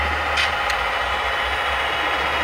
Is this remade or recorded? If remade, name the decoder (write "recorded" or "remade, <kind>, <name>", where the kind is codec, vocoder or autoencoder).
recorded